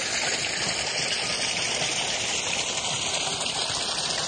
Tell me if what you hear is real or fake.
real